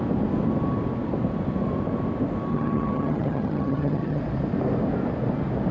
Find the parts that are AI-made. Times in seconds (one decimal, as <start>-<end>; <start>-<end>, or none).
2.5-4.2